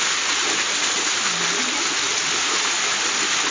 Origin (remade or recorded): recorded